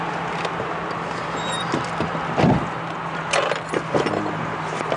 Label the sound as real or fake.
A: real